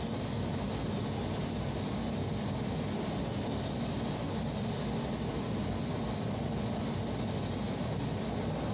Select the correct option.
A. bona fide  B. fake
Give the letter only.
A